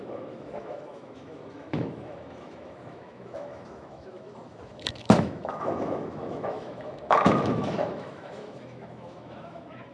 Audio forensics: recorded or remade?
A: remade